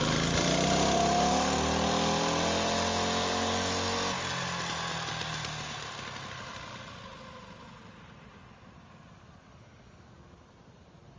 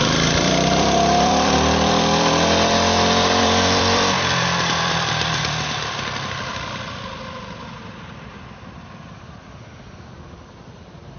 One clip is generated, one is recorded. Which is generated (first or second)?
second